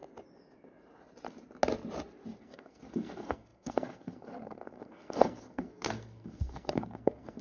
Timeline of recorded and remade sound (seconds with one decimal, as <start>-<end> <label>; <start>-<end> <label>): 0.0-2.4 recorded; 2.4-7.4 remade